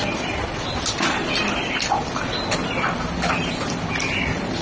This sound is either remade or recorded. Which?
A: recorded